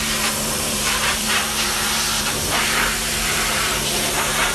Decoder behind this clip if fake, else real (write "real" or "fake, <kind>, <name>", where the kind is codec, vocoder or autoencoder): fake, vocoder, BigVGAN v2